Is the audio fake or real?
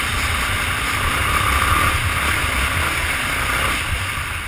real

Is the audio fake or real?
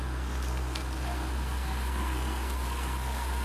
fake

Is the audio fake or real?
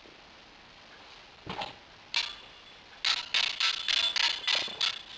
real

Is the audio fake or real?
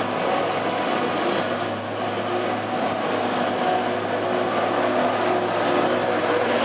real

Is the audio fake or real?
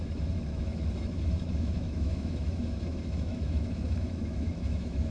fake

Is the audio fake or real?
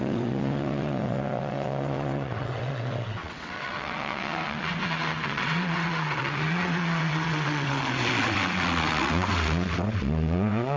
fake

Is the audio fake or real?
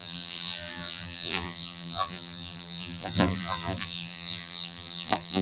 fake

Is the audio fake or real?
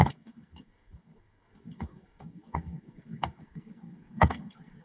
fake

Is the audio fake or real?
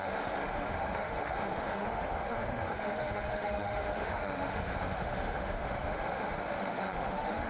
fake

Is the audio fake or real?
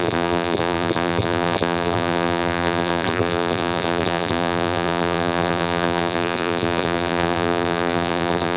fake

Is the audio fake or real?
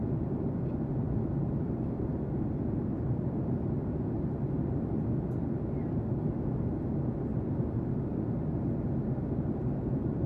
real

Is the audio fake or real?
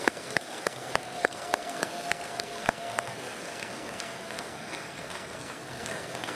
fake